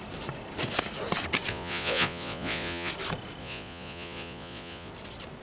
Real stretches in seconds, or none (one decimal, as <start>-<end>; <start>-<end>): 0.0-1.5; 2.9-3.4; 4.9-5.4

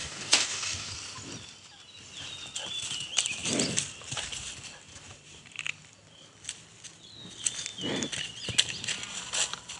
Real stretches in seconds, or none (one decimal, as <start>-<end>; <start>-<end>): 0.9-9.8

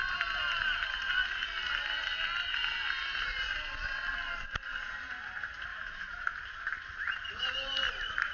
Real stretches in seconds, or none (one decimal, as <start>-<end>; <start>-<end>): 0.0-5.7; 6.4-8.3

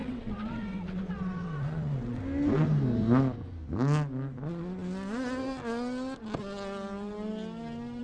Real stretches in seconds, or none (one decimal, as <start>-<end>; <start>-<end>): 2.2-8.0

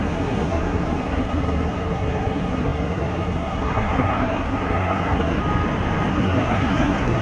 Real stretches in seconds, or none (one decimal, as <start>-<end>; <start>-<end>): 5.4-6.1